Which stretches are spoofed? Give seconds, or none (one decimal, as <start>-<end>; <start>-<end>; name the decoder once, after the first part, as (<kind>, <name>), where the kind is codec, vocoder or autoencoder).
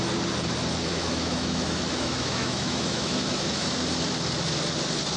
0.9-3.7 (autoencoder, DAC-VAE)